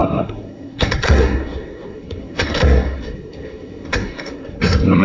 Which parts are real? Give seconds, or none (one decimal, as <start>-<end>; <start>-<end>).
none